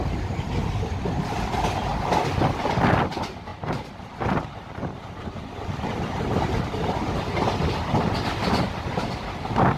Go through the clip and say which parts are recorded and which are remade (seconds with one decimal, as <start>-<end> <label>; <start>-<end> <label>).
0.0-9.8 recorded